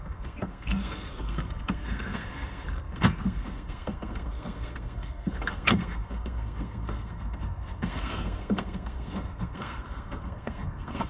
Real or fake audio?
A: fake